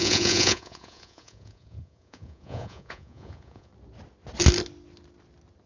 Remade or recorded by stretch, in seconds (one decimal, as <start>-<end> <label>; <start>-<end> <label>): 0.0-3.7 remade; 3.7-5.7 recorded